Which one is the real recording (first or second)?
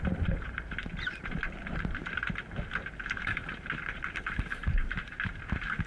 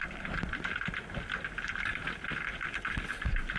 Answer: second